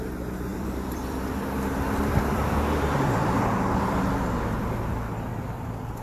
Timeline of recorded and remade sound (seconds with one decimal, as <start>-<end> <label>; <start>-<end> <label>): 0.0-0.5 recorded; 0.5-4.1 remade; 4.1-5.3 recorded; 5.3-6.0 remade

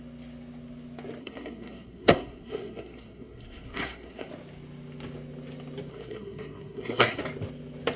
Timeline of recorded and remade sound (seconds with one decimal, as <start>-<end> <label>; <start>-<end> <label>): 0.0-1.2 recorded; 1.2-4.3 remade; 4.3-5.9 recorded; 5.9-7.2 remade; 7.2-8.0 recorded

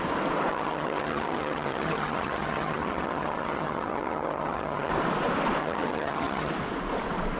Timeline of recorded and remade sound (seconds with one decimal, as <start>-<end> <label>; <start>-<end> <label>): 0.0-0.5 recorded; 0.5-4.9 remade; 4.9-5.6 recorded; 5.6-6.5 remade; 6.5-7.4 recorded

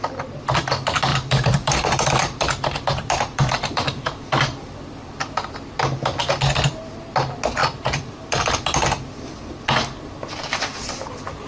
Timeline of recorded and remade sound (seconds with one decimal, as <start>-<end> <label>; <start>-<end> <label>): 0.0-1.1 recorded; 1.1-5.7 remade; 5.7-7.6 recorded; 7.6-8.5 remade; 8.5-11.5 recorded